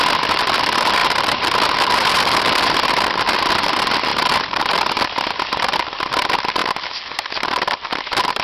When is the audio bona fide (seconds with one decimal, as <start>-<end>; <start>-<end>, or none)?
6.6-7.1